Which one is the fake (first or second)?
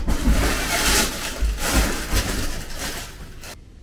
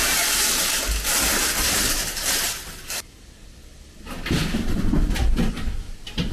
second